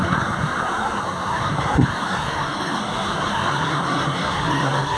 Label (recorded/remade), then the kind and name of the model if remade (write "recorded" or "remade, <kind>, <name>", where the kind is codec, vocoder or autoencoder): remade, codec, SNAC